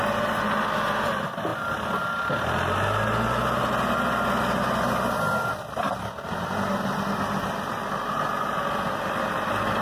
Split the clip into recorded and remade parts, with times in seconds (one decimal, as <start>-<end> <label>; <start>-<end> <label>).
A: 0.0-9.8 recorded

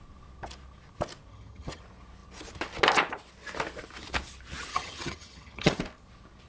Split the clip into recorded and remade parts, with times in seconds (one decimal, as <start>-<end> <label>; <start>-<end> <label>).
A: 0.0-1.3 recorded; 1.3-1.8 remade; 1.8-4.7 recorded; 4.7-5.8 remade; 5.8-6.5 recorded

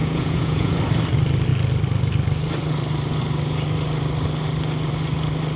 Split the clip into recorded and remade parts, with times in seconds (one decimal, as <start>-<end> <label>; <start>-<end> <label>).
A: 0.0-0.8 remade; 0.8-5.6 recorded

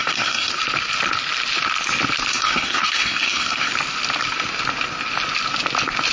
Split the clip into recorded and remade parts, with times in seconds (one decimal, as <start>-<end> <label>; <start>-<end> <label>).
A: 0.0-0.5 remade; 0.5-2.3 recorded; 2.3-3.7 remade; 3.7-6.1 recorded

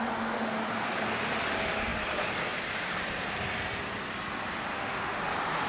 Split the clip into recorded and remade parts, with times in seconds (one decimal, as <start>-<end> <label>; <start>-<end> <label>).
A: 0.0-4.7 recorded; 4.7-5.2 remade; 5.2-5.7 recorded

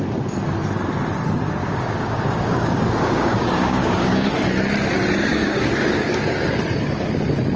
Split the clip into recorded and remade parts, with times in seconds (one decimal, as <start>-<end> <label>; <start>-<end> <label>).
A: 0.0-1.6 recorded; 1.6-4.3 remade; 4.3-5.3 recorded; 5.3-6.5 remade; 6.5-7.6 recorded